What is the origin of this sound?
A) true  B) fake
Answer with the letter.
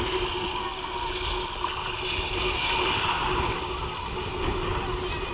A